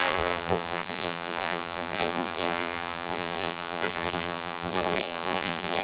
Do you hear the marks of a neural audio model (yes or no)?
yes